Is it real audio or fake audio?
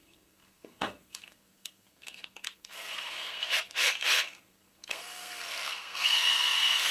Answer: fake